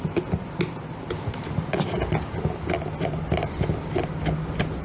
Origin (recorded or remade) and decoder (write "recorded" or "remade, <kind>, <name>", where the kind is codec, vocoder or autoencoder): recorded